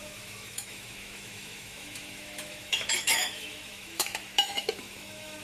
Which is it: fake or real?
fake